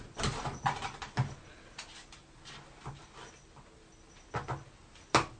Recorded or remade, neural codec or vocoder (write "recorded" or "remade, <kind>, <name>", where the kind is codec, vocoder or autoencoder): recorded